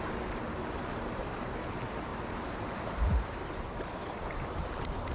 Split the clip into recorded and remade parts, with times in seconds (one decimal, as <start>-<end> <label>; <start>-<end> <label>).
0.0-0.9 recorded; 0.9-1.6 remade; 1.6-2.1 recorded; 2.1-3.4 remade; 3.4-5.1 recorded